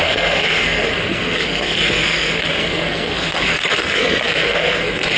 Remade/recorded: remade